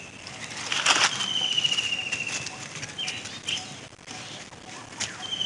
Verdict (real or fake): real